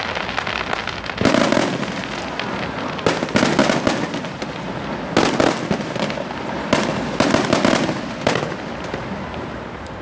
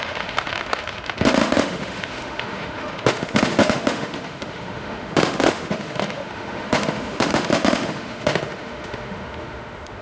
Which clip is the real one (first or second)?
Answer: first